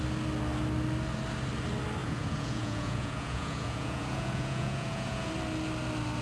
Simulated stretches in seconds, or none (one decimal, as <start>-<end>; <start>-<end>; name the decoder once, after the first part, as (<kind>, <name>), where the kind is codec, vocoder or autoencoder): 2.0-5.3 (vocoder, Vocos)